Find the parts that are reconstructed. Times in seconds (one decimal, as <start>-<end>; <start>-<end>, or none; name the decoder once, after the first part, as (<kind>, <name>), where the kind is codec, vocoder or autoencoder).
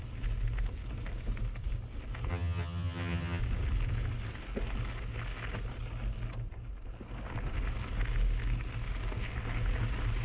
2.3-3.4 (vocoder, HiFi-GAN)